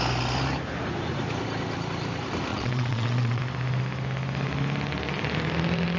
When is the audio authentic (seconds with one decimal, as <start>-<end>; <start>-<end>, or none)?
0.0-2.5; 3.4-6.0